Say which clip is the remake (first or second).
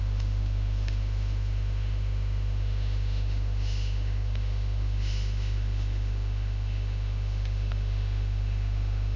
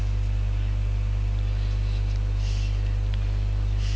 first